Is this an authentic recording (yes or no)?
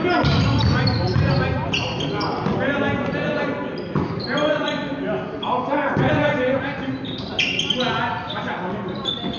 yes